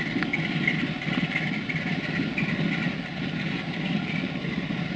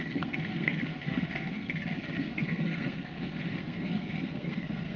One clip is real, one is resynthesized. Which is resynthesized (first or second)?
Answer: second